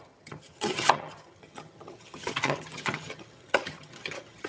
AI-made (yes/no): yes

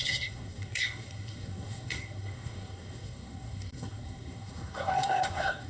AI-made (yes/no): yes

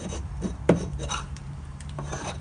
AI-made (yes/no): yes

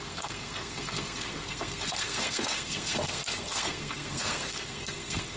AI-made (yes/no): yes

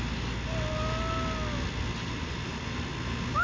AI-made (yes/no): no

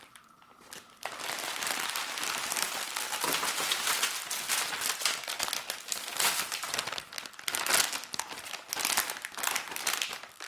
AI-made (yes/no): no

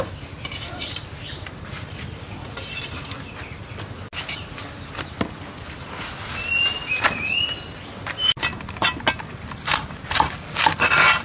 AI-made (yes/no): no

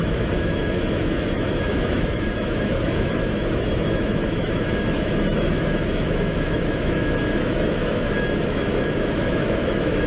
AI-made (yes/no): yes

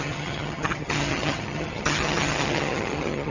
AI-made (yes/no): yes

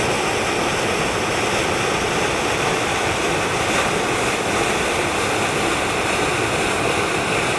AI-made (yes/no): no